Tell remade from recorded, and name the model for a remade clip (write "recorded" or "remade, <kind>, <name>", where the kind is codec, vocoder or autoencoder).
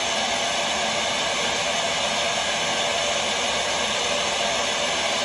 recorded